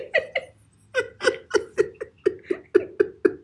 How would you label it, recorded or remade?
recorded